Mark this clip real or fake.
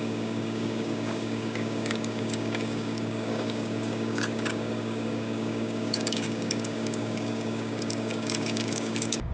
fake